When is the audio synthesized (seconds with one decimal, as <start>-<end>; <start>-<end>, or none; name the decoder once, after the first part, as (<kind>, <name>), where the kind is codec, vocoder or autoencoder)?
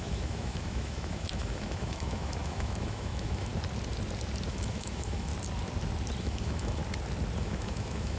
0.0-3.5 (autoencoder, DAC-VAE); 4.5-5.3; 6.2-6.8; 7.4-8.2